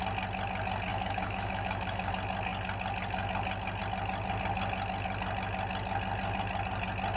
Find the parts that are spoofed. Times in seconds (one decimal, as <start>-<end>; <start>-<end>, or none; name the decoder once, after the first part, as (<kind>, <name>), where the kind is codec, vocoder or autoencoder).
0.9-2.1 (autoencoder, DAC-VAE)